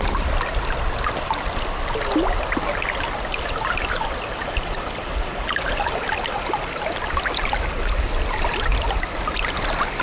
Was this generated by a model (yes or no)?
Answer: no